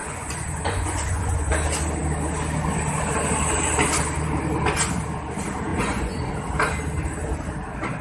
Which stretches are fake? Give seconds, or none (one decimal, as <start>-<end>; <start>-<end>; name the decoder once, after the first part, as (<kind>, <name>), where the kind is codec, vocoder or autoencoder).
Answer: 0.0-1.5 (vocoder, Vocos); 5.7-6.3